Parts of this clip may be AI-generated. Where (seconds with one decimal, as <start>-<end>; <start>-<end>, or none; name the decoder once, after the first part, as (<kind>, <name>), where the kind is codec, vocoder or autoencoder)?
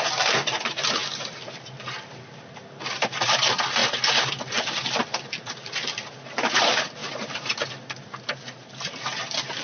0.0-3.8 (vocoder, BigVGAN v2); 4.3-7.0; 8.3-9.6